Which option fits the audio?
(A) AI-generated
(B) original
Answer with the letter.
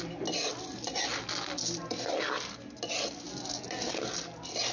B